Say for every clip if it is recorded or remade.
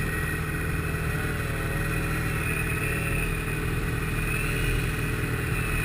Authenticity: recorded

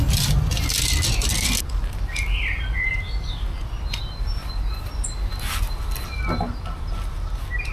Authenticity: recorded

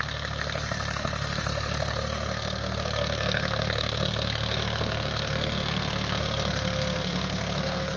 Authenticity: remade